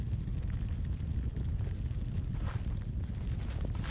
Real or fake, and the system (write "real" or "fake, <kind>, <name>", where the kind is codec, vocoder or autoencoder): real